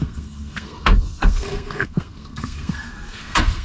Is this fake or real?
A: fake